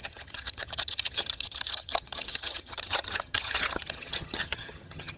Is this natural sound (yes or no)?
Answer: no